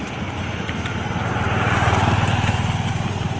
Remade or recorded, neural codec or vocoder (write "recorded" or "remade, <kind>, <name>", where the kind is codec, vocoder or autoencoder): recorded